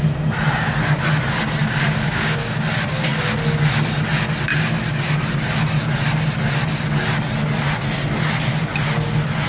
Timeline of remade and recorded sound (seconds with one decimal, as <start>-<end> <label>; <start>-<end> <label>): 0.0-1.6 recorded; 1.6-2.6 remade; 2.6-9.5 recorded